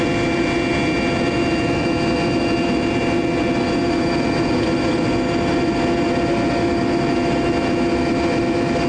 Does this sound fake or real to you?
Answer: real